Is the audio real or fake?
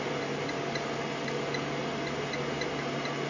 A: real